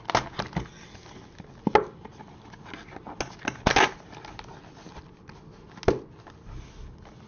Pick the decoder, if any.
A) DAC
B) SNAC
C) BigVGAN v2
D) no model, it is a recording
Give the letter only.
D